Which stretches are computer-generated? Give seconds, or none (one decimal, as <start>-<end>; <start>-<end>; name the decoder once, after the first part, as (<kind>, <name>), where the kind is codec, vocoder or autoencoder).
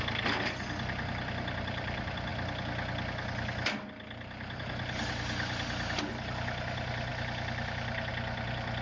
none